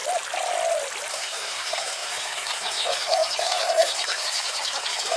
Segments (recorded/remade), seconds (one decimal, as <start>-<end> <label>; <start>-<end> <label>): 0.0-1.1 recorded; 1.1-5.2 remade